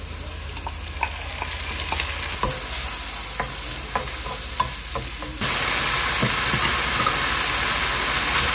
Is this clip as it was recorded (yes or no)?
yes